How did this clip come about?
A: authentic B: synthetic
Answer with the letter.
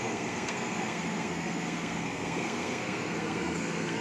B